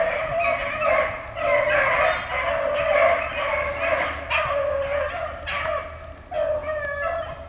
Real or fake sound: real